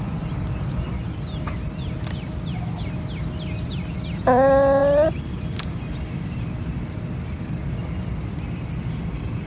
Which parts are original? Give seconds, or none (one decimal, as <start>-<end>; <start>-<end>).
0.0-9.5